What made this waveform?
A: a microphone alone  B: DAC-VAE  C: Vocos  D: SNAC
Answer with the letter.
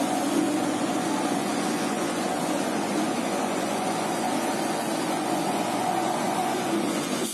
C